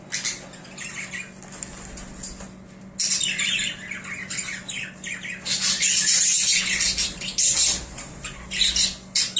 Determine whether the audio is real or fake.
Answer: real